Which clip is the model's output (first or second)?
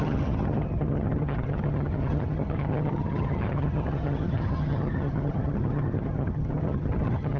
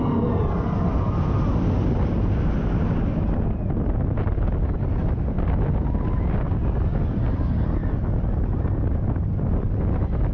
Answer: first